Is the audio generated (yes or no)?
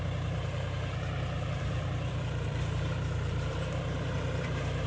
yes